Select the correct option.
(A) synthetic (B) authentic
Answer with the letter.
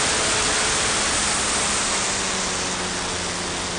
B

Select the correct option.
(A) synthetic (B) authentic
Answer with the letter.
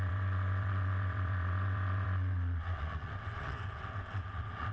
A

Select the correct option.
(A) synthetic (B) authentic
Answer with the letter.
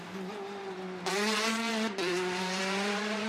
A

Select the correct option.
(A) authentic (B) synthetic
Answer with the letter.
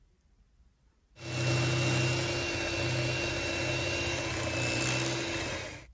A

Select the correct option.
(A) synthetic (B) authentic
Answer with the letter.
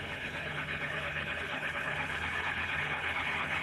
A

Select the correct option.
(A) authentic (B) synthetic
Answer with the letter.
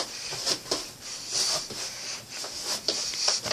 A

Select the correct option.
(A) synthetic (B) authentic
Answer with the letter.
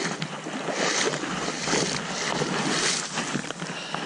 B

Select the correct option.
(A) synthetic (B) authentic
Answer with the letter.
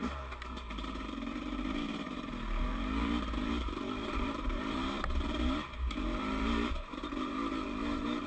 A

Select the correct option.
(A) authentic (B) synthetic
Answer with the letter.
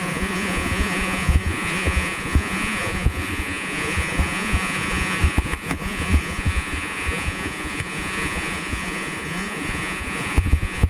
B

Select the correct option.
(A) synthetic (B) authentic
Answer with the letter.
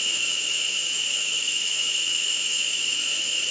A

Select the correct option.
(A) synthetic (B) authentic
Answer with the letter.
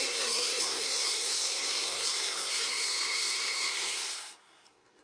A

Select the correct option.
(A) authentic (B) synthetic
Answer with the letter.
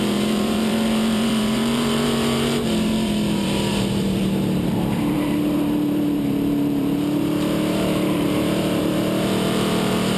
B